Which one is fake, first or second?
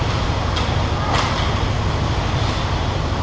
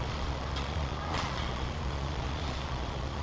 second